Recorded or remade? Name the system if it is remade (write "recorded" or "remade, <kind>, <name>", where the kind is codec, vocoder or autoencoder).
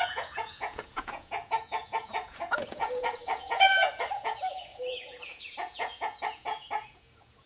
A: remade, vocoder, Vocos